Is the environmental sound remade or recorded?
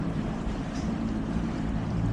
remade